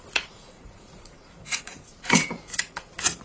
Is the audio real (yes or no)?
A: no